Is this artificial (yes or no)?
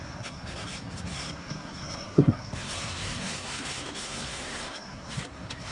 yes